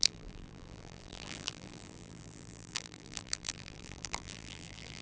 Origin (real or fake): fake